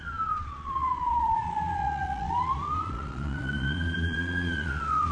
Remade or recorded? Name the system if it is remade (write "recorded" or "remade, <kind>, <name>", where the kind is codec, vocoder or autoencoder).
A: remade, vocoder, Vocos